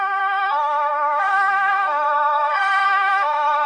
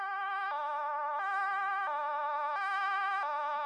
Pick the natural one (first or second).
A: second